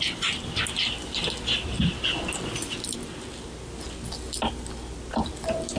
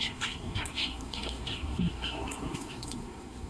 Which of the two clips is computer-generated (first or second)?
second